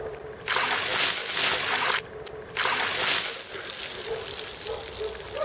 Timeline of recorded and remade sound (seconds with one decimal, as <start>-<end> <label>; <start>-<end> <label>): 0.0-5.4 recorded

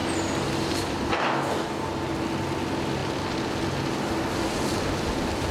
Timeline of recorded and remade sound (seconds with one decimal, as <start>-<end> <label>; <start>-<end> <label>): 0.0-1.1 recorded; 1.1-1.9 remade; 1.9-5.5 recorded